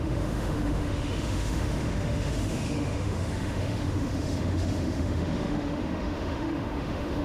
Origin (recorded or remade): remade